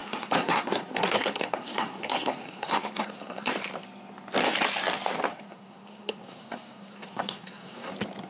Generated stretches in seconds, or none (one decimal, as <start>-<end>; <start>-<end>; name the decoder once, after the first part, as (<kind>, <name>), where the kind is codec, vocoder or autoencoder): 0.0-3.5 (codec, SNAC); 5.3-7.9